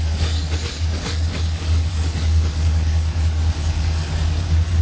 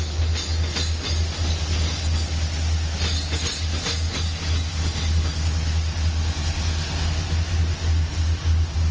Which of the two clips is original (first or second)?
second